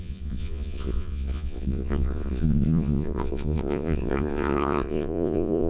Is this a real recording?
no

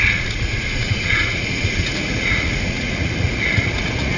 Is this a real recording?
no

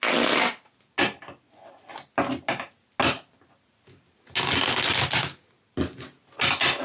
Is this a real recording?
yes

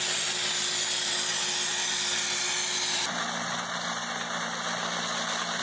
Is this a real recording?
yes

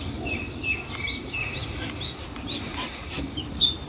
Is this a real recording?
yes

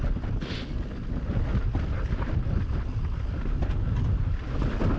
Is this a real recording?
yes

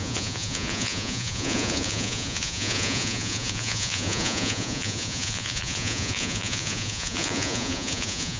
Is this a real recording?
no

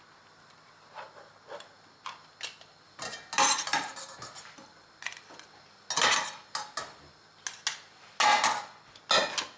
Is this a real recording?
yes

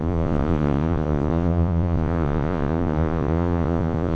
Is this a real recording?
no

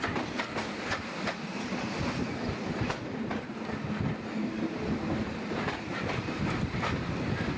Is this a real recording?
yes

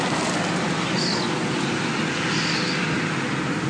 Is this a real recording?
yes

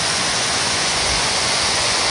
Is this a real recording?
no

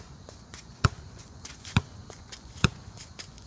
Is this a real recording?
no